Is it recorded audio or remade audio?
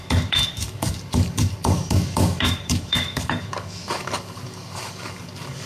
remade